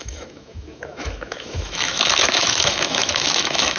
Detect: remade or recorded remade